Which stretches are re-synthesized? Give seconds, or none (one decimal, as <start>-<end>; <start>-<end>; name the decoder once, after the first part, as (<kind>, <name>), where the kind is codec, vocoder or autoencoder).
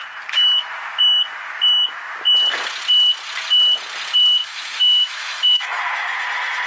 4.4-5.8 (autoencoder, DAC-VAE)